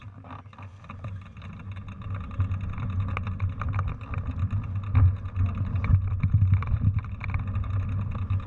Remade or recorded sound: recorded